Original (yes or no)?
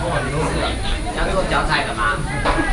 yes